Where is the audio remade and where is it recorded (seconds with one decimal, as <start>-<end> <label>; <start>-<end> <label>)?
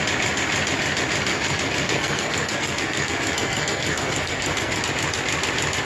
0.0-1.3 recorded; 1.3-4.8 remade; 4.8-5.8 recorded